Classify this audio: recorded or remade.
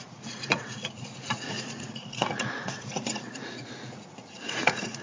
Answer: remade